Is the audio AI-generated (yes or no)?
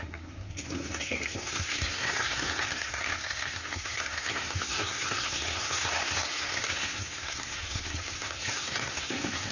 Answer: yes